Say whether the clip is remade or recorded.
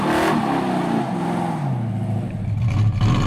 recorded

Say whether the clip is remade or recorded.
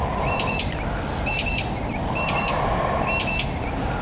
recorded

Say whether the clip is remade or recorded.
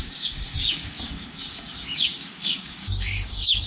remade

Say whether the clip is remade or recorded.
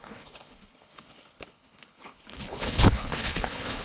remade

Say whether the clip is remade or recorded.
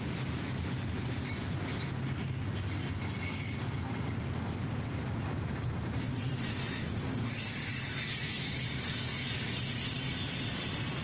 recorded